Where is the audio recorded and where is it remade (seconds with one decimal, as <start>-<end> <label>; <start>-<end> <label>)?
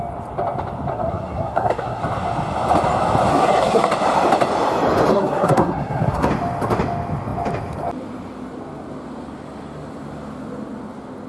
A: 0.0-0.9 recorded; 0.9-2.0 remade; 2.0-3.3 recorded; 3.3-3.9 remade; 3.9-5.1 recorded; 5.1-6.3 remade; 6.3-11.3 recorded